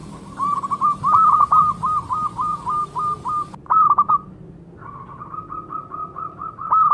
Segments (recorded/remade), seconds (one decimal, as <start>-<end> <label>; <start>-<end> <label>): 0.0-4.1 remade; 4.1-6.0 recorded; 6.0-6.5 remade; 6.5-6.9 recorded